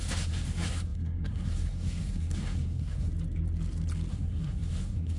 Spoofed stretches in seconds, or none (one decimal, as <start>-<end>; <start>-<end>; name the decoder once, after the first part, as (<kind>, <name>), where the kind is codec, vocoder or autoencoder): 0.0-3.1 (codec, SNAC); 4.1-5.2

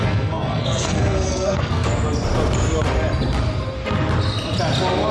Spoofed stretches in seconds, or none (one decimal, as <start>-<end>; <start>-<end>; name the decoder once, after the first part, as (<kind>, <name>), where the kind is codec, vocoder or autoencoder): 0.0-1.9 (codec, SNAC)

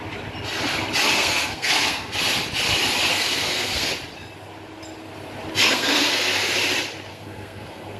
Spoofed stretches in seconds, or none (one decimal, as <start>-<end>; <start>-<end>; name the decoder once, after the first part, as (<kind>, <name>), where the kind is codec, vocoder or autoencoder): 1.2-2.1 (codec, SNAC); 3.1-3.9; 5.6-6.5; 7.1-8.0

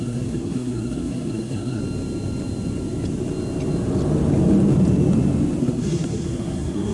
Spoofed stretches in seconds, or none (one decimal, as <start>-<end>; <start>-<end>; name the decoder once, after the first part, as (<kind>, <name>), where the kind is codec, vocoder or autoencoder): 0.0-1.8 (codec, SNAC); 5.6-6.9

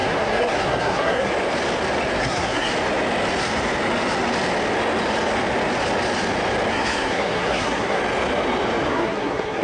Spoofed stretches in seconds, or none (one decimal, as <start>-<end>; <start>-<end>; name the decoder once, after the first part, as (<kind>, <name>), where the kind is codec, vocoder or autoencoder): 0.0-1.3 (codec, SNAC); 2.2-2.7; 6.7-8.0; 8.9-9.6

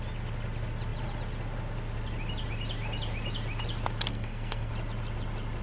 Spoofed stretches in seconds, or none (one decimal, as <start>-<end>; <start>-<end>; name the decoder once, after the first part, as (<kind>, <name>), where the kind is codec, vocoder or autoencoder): 4.1-4.7 (codec, SNAC)

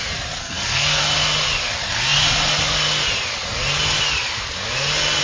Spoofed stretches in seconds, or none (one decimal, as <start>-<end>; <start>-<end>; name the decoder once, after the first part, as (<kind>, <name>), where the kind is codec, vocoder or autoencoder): 0.4-1.0 (codec, SNAC)